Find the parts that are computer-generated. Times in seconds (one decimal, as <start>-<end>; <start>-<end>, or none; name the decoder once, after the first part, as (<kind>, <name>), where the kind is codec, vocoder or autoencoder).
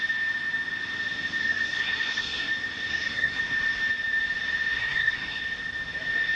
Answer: 1.4-2.5 (codec, SNAC); 2.9-3.4; 4.8-5.4